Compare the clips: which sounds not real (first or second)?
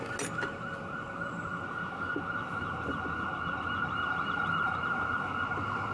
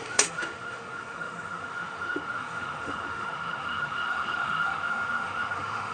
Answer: second